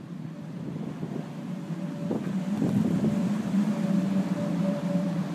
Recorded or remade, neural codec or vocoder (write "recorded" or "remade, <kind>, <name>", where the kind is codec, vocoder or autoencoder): remade, vocoder, BigVGAN v2